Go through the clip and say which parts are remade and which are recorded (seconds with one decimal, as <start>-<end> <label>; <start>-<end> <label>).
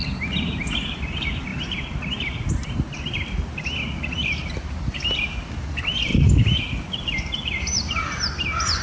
0.0-8.8 recorded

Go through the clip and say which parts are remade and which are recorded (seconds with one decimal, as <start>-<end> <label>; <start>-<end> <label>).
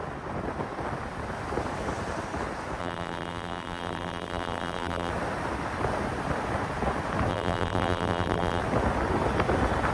0.0-2.8 recorded; 2.8-5.1 remade; 5.1-7.3 recorded; 7.3-8.6 remade; 8.6-9.9 recorded